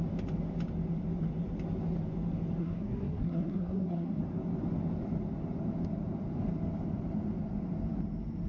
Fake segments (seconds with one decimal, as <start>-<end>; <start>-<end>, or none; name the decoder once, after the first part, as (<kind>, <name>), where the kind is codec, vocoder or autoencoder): 2.6-4.2 (codec, SNAC)